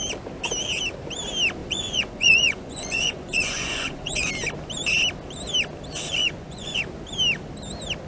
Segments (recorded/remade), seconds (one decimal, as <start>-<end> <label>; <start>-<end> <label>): 0.0-1.6 recorded; 1.6-4.3 remade; 4.3-6.2 recorded; 6.2-6.8 remade; 6.8-8.1 recorded